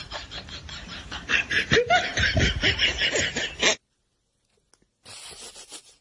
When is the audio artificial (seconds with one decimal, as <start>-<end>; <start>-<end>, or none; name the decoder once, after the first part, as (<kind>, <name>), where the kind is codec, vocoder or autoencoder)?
0.0-1.5 (vocoder, BigVGAN v2)